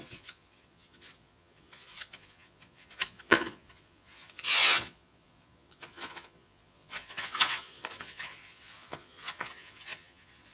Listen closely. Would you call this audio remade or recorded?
remade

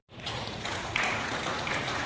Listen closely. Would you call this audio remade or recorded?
remade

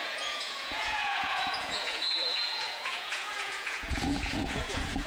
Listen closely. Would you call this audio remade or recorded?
remade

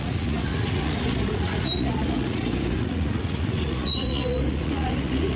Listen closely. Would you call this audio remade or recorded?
remade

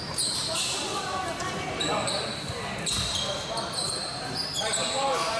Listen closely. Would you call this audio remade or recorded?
recorded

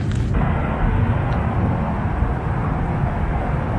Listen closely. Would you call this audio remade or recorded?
recorded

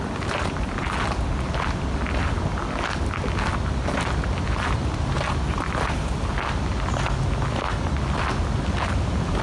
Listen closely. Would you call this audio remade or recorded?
recorded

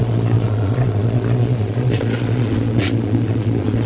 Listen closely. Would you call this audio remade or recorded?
remade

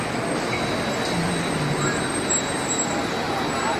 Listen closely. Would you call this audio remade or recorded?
recorded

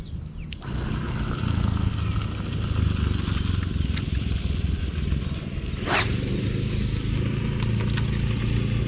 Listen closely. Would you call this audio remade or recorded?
recorded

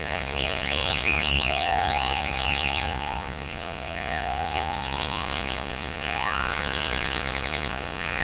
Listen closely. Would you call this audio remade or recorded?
remade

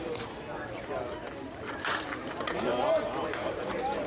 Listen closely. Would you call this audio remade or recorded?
recorded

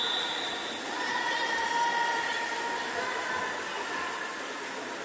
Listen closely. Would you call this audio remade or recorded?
recorded